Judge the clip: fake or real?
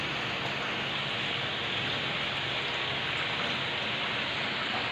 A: real